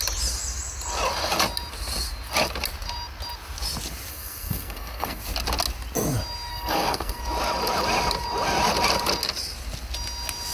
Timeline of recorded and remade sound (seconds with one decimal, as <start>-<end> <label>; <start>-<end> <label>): 0.0-4.1 recorded; 4.1-5.2 remade; 5.2-6.5 recorded; 6.5-7.2 remade; 7.2-10.5 recorded